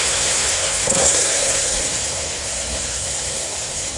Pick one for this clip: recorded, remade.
remade